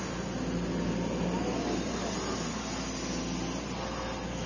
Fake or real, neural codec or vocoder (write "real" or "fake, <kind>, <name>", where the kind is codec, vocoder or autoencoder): real